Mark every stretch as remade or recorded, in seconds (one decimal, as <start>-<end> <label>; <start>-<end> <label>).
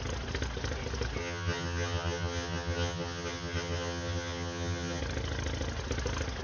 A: 0.0-1.2 recorded; 1.2-5.0 remade; 5.0-6.4 recorded